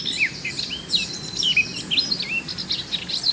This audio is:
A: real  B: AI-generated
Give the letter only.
A